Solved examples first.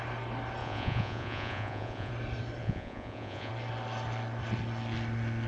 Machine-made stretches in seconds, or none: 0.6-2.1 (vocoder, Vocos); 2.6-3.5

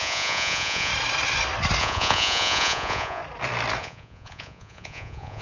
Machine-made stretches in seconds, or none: 0.0-0.9 (vocoder, Vocos); 1.8-3.2; 3.8-5.4

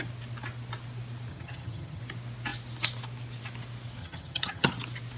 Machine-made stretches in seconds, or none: 1.3-2.0 (vocoder, HiFi-GAN); 4.0-4.7

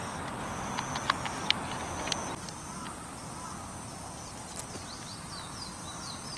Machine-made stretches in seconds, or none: none

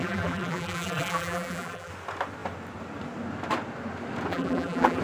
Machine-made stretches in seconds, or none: 0.0-1.9 (vocoder, BigVGAN v2); 4.3-5.0